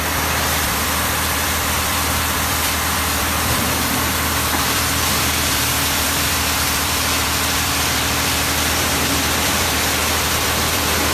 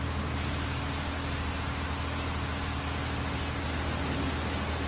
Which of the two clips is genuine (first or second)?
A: second